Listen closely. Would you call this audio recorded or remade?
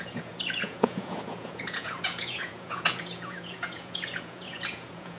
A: remade